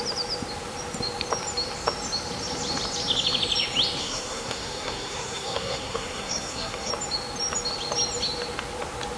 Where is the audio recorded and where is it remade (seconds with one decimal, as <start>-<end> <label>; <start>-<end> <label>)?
0.0-4.0 recorded; 4.0-6.9 remade; 6.9-9.2 recorded